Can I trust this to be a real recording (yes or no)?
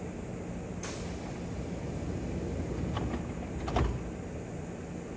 yes